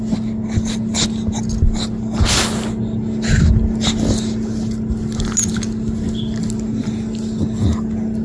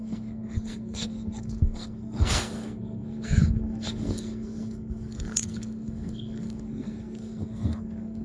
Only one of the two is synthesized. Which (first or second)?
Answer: second